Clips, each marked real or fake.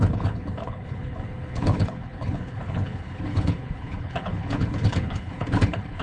fake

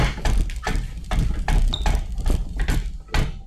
real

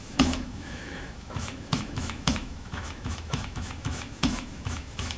fake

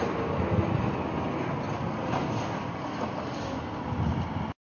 real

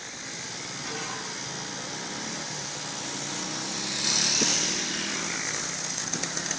real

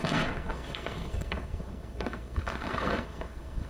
fake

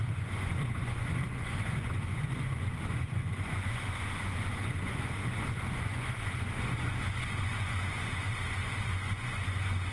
fake